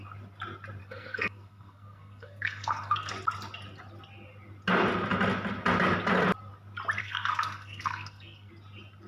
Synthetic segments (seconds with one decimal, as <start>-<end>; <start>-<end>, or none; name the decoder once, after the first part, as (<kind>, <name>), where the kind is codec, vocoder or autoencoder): 0.8-3.1 (codec, SNAC); 7.0-8.5